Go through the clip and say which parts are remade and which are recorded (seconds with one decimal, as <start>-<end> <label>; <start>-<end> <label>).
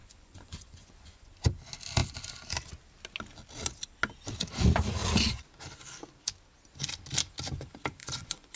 0.0-1.3 remade; 1.3-8.0 recorded; 8.0-8.6 remade